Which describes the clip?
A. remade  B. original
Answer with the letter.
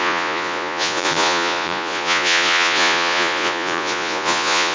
A